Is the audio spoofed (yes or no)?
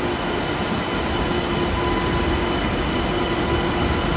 no